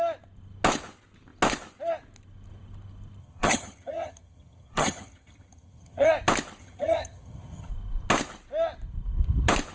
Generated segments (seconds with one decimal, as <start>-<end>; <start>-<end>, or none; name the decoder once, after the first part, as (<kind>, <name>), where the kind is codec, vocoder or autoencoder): 3.2-6.1 (vocoder, HiFi-GAN); 6.6-7.7